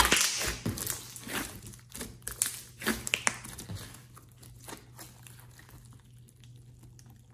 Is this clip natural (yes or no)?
yes